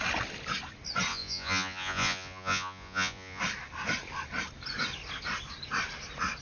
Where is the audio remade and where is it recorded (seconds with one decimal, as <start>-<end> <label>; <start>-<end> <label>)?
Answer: 0.0-1.1 recorded; 1.1-3.4 remade; 3.4-6.4 recorded